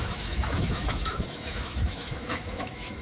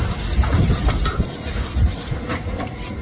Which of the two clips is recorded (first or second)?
second